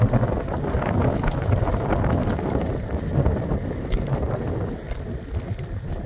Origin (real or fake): real